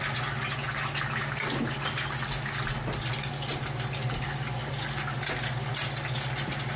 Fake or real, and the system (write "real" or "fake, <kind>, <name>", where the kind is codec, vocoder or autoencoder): real